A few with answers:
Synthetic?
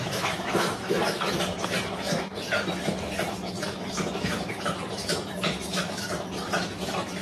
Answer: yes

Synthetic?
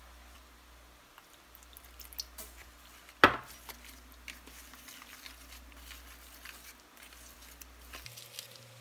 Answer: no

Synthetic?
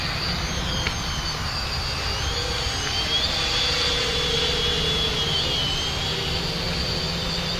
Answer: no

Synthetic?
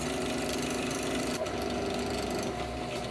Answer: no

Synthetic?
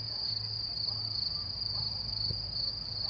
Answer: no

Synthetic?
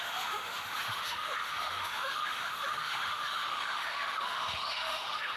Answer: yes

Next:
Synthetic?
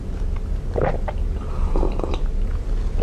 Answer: no